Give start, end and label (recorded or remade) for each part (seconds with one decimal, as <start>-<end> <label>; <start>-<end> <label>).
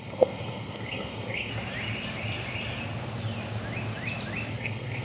0.0-1.5 remade; 1.5-4.5 recorded; 4.5-5.0 remade